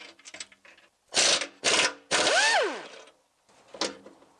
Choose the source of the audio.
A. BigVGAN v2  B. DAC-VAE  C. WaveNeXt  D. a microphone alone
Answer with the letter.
D